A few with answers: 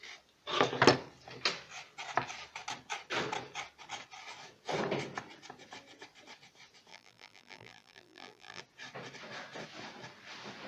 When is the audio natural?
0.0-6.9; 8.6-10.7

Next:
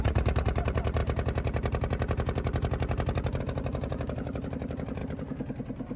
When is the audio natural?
1.0-3.4; 5.0-6.0

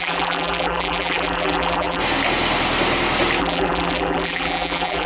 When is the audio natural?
2.0-3.4

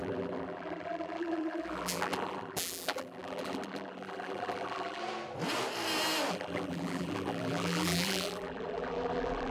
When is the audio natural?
5.0-6.3

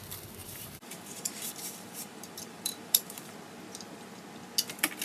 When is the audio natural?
0.0-0.4; 3.4-5.0

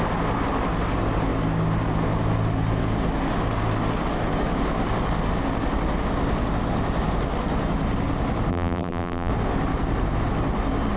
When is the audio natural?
0.0-8.5; 9.3-11.0

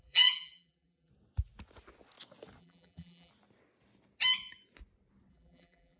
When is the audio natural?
1.1-2.6; 3.3-5.3

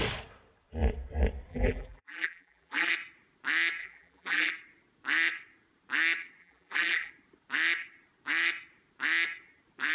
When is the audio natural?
0.0-1.5; 2.9-3.8; 4.5-6.4; 7.1-9.9